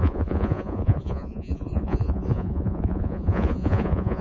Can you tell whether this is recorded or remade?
remade